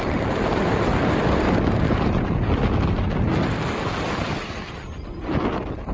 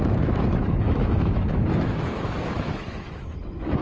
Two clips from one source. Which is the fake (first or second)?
second